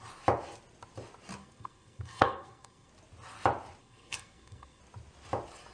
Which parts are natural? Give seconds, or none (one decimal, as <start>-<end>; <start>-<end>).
0.0-1.4; 2.9-3.8; 4.8-5.7